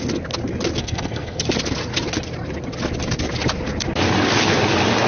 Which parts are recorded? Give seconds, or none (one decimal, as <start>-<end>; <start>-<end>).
0.0-0.8; 1.4-5.1